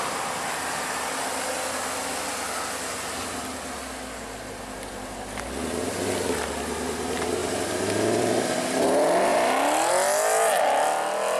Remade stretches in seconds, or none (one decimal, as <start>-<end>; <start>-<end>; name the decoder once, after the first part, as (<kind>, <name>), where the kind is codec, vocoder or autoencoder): 7.4-8.8 (vocoder, BigVGAN v2)